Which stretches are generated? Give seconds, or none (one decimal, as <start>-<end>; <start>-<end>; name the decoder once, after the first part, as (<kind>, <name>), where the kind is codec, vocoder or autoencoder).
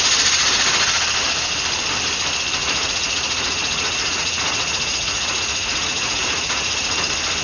2.6-7.0 (vocoder, Vocos)